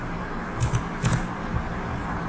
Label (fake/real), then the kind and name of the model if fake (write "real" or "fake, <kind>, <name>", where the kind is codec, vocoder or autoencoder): fake, vocoder, BigVGAN v2